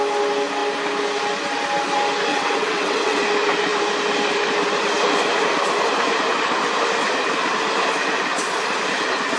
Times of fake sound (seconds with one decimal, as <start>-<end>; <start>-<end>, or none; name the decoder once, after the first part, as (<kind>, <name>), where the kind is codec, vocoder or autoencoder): 2.3-3.2 (vocoder, WaveNeXt)

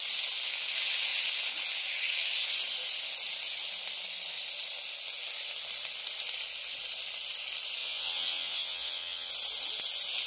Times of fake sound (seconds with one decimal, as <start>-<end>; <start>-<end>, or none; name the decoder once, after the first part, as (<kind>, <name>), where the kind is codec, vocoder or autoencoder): 7.8-9.3 (vocoder, WaveNeXt)

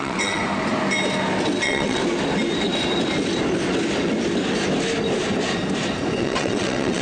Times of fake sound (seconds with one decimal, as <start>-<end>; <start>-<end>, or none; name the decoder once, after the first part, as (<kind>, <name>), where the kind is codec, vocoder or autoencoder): 0.0-0.4 (vocoder, WaveNeXt); 1.6-2.0; 6.2-7.0

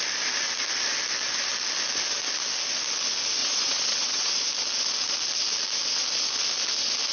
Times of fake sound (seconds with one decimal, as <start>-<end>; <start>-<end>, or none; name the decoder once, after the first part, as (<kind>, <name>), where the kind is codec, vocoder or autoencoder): 3.4-4.3 (vocoder, WaveNeXt)